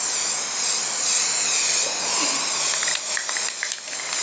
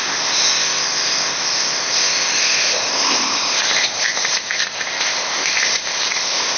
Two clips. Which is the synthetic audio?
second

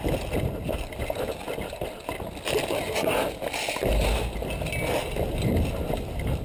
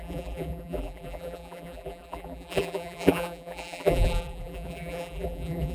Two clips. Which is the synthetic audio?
second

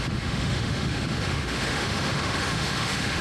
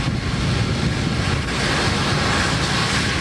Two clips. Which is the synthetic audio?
first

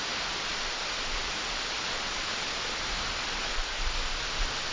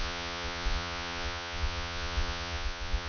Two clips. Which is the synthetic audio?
second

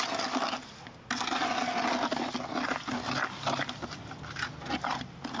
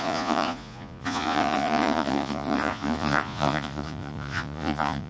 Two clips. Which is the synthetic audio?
second